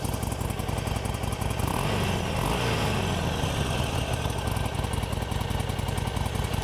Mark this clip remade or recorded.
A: recorded